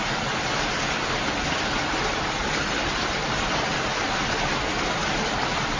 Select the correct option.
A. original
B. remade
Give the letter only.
A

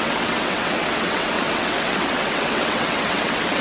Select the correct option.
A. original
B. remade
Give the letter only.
B